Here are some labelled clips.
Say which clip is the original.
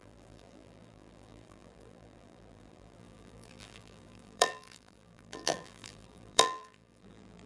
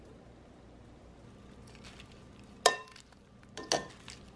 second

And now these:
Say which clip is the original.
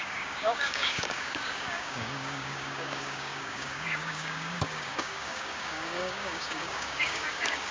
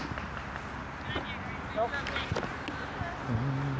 second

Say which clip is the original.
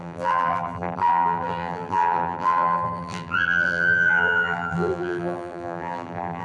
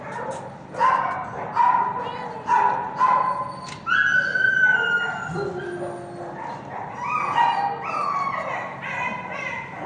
second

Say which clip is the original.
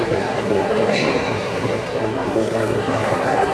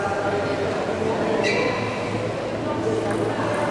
second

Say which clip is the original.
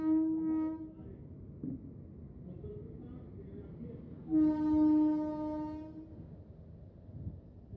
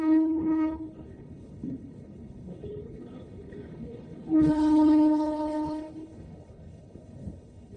first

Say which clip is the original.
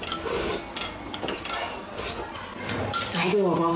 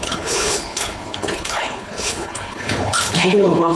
first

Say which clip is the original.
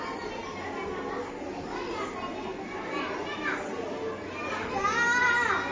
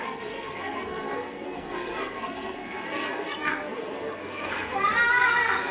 first